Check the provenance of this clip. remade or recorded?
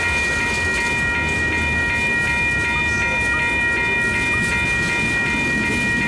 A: recorded